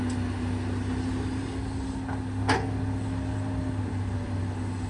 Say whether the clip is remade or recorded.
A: recorded